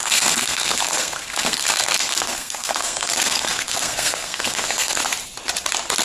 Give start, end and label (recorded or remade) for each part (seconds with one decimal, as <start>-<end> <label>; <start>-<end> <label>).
0.0-5.0 remade; 5.0-6.0 recorded